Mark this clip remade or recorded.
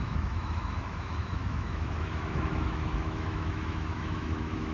remade